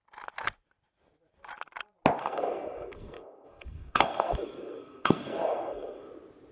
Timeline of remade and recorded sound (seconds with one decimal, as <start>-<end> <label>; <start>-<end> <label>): 0.0-2.2 recorded; 2.2-6.1 remade; 6.1-6.5 recorded